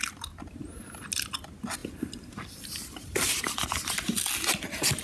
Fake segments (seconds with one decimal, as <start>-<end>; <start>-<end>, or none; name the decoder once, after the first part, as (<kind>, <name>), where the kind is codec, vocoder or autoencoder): none